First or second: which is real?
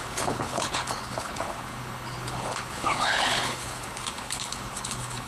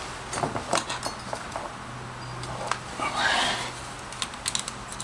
second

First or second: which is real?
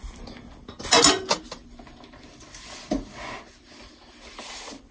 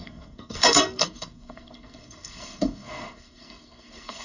first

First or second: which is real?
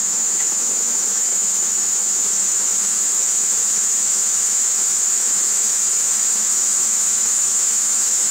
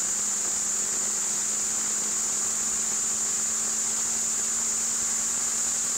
second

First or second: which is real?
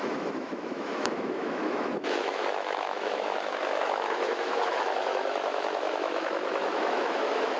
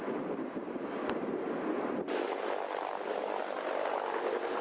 second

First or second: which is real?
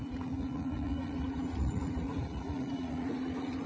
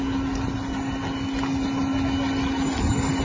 second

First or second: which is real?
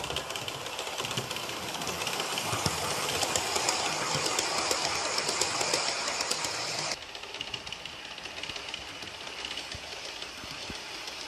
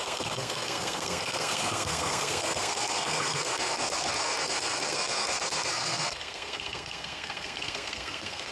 first